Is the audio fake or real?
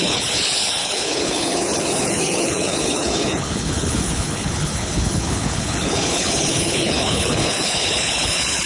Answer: fake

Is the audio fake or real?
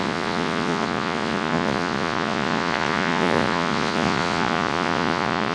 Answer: fake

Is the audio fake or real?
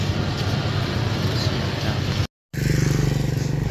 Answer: real